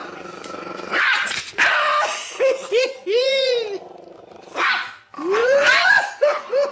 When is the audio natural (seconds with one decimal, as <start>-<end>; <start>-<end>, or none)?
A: 1.6-2.6; 3.8-5.4